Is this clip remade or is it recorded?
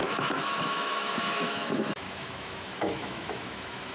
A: remade